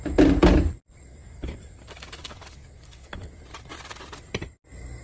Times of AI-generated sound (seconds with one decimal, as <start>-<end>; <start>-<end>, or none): 1.1-3.3